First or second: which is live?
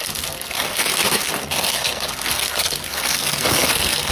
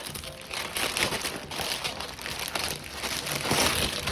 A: second